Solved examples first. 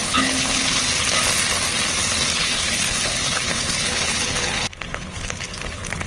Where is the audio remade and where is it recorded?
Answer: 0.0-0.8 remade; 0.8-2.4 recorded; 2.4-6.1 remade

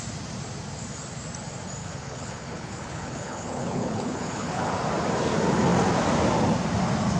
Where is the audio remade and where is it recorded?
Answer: 0.0-1.8 recorded; 1.8-4.7 remade; 4.7-7.2 recorded

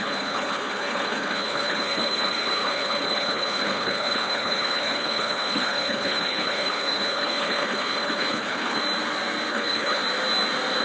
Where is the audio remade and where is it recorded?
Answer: 0.0-8.8 remade; 8.8-9.5 recorded; 9.5-10.0 remade; 10.0-10.8 recorded